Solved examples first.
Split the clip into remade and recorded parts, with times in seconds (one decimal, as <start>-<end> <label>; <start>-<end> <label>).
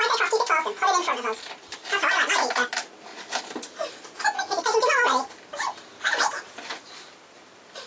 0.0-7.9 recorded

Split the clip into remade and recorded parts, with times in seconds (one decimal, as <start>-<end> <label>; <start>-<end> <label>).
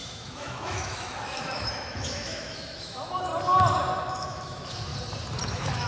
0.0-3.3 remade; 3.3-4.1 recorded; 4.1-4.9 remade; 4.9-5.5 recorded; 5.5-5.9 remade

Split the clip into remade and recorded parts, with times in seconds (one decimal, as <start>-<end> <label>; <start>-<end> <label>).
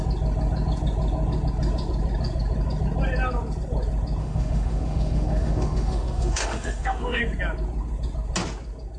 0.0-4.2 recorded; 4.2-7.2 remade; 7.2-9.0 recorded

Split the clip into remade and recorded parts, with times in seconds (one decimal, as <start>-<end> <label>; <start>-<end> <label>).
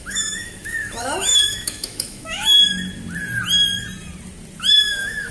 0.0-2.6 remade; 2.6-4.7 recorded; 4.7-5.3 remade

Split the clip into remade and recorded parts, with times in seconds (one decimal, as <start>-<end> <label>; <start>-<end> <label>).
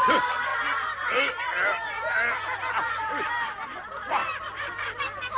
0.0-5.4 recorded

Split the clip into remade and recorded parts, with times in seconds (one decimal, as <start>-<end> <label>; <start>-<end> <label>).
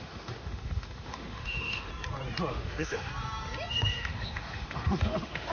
0.0-1.9 remade; 1.9-2.5 recorded; 2.5-3.1 remade; 3.1-3.7 recorded; 3.7-5.5 remade